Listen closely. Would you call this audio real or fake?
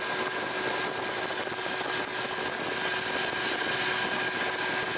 real